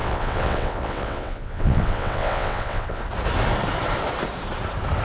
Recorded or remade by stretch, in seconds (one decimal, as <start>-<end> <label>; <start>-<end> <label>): 0.0-3.0 remade; 3.0-5.0 recorded